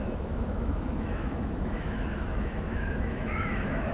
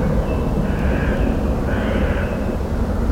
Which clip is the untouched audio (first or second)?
second